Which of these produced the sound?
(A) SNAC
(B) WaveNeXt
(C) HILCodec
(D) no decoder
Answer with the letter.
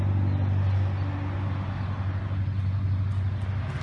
D